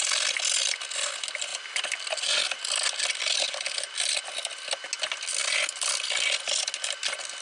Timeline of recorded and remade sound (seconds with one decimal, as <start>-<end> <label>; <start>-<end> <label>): 0.0-7.4 recorded